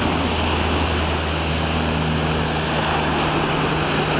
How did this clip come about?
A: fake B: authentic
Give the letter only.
B